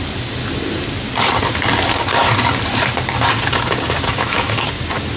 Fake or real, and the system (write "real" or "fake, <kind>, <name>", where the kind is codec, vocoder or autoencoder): real